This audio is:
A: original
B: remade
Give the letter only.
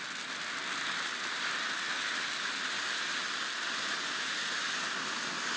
A